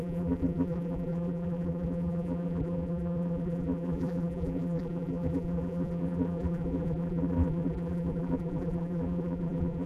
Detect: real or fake fake